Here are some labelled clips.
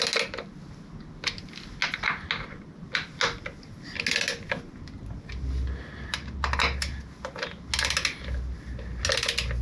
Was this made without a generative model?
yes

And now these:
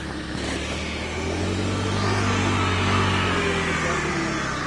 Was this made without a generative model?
yes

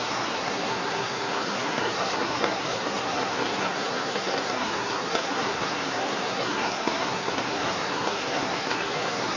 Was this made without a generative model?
no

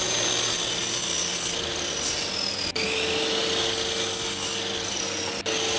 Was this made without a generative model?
yes